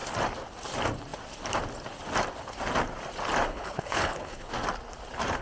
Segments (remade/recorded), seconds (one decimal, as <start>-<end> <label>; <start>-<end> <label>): 0.0-3.5 recorded; 3.5-4.5 remade; 4.5-5.4 recorded